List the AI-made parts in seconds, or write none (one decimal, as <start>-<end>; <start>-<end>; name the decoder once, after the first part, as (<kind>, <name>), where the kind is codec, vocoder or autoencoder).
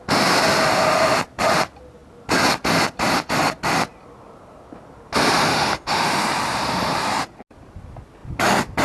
5.5-6.2 (autoencoder, DAC-VAE)